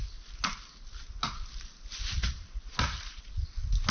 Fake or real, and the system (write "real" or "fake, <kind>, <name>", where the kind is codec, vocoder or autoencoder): real